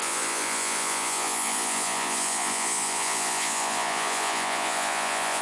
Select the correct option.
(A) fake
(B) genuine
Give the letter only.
A